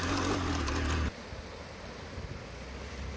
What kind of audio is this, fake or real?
real